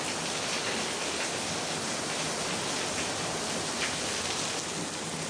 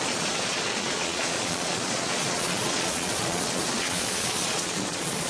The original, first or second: first